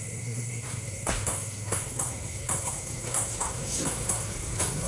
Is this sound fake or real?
fake